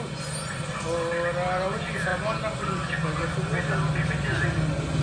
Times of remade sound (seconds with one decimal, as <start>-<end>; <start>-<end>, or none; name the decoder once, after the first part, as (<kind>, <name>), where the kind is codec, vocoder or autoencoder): none